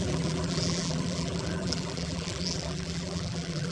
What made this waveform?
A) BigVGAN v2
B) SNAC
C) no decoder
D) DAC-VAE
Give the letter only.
A